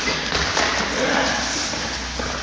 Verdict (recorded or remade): recorded